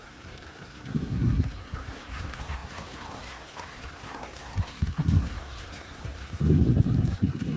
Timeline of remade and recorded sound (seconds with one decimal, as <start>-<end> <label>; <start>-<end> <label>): 0.0-7.6 remade